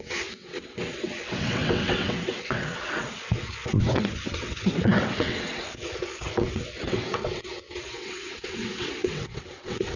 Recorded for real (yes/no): no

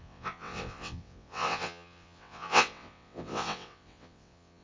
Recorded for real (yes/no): no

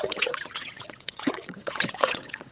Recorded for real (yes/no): no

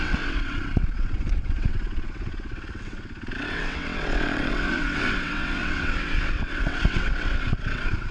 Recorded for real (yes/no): no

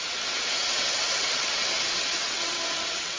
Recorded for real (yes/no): no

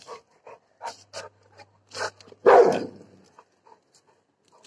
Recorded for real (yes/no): yes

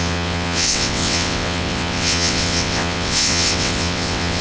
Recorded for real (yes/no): no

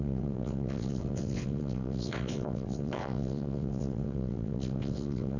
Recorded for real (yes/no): no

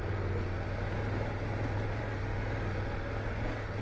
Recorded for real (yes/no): yes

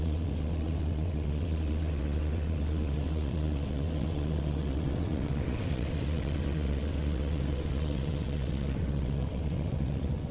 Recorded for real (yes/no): no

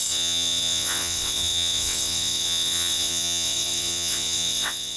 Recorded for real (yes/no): no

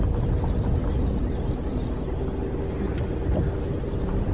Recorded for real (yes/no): yes